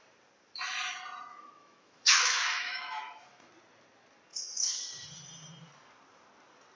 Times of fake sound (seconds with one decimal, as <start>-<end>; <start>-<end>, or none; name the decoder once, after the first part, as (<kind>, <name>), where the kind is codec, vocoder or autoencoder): 1.3-3.5 (autoencoder, DAC-VAE); 4.3-4.8